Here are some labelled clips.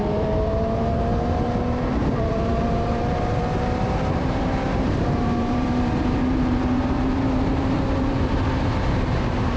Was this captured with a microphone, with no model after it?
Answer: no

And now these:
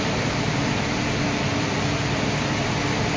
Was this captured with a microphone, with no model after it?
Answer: no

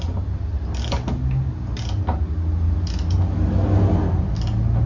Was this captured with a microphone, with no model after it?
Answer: yes